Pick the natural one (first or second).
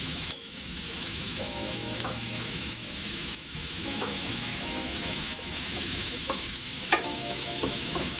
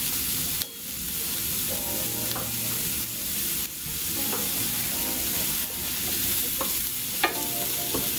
second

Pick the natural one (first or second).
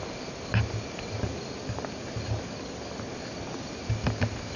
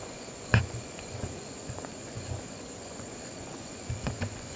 first